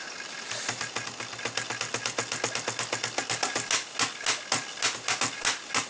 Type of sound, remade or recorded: recorded